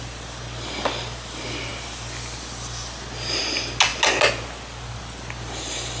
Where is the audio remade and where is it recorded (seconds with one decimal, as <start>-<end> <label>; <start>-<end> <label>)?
0.0-6.0 recorded